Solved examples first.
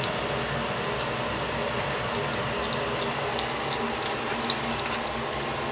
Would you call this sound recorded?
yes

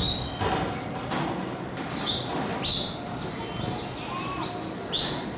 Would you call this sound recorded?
yes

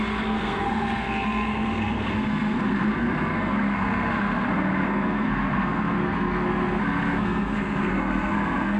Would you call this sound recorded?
no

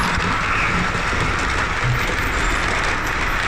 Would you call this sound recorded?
yes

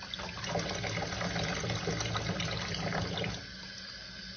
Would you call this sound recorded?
yes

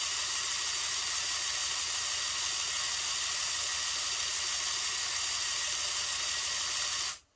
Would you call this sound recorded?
yes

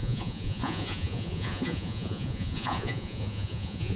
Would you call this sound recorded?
no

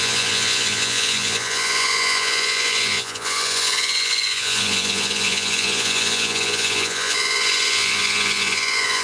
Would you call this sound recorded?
no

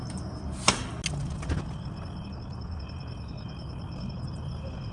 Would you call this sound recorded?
yes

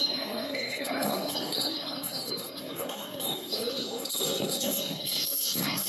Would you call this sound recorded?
no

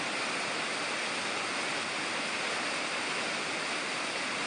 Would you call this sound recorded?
yes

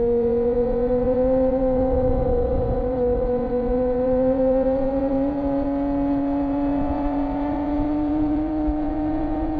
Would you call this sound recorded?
no